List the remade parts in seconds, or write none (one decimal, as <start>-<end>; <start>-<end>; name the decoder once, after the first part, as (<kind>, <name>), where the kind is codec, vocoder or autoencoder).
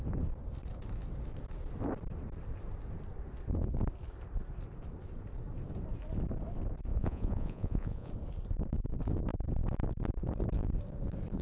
6.9-8.1 (vocoder, Vocos)